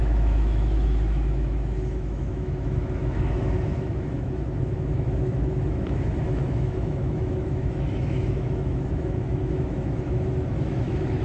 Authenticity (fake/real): fake